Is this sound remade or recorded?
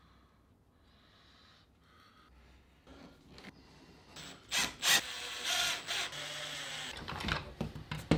recorded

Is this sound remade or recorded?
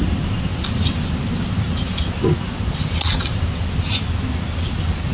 recorded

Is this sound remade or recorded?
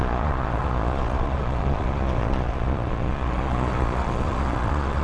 remade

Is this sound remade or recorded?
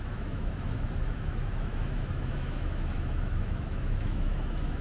remade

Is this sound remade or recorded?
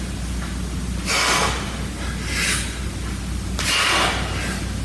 recorded